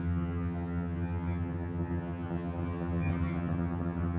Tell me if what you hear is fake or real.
fake